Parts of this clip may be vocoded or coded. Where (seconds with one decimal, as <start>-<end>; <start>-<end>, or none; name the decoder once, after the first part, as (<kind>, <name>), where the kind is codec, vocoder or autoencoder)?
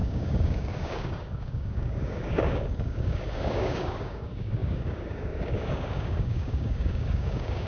0.0-7.7 (codec, DAC)